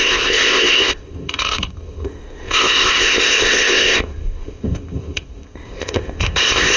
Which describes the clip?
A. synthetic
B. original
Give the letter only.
A